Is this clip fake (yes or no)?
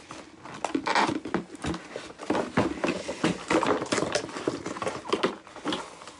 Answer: no